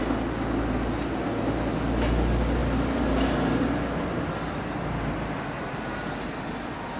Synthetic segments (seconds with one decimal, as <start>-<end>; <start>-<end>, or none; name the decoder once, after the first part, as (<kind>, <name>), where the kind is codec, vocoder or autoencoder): none